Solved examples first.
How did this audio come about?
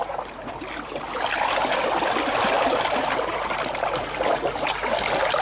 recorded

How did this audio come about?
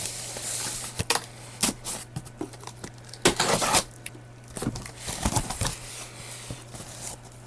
recorded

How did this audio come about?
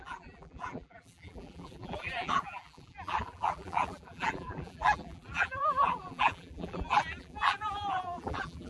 remade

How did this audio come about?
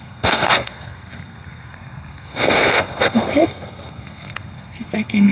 remade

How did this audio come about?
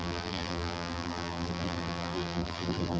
remade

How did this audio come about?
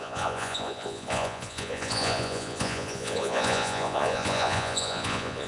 remade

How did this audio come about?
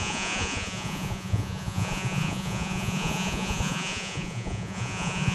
remade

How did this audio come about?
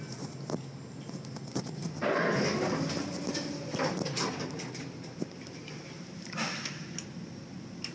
recorded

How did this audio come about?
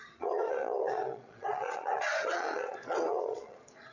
remade